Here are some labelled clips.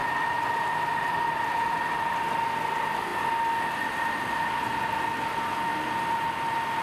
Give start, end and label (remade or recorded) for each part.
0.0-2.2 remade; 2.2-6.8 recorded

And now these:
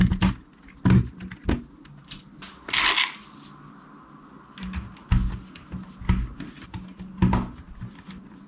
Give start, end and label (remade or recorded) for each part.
0.0-8.5 recorded

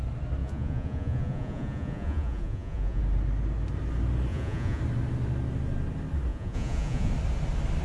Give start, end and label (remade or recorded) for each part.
0.0-0.4 recorded; 0.4-3.0 remade; 3.0-4.3 recorded; 4.3-4.8 remade; 4.8-6.3 recorded; 6.3-7.1 remade; 7.1-7.8 recorded

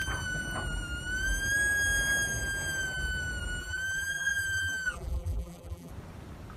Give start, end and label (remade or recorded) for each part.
0.0-3.6 recorded; 3.6-5.9 remade; 5.9-6.6 recorded

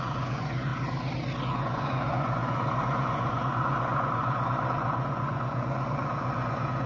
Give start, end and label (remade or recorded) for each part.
0.0-0.7 remade; 0.7-1.4 recorded; 1.4-6.9 remade